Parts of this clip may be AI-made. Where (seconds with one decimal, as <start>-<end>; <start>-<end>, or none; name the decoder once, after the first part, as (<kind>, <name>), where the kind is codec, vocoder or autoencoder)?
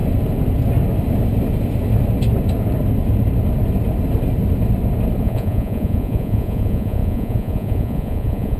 5.2-8.6 (vocoder, Vocos)